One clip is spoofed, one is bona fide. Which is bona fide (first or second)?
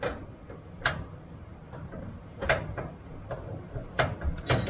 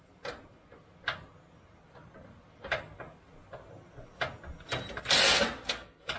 second